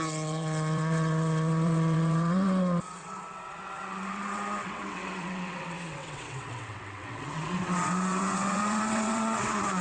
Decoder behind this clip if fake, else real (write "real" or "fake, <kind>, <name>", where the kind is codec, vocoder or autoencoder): fake, vocoder, WaveNeXt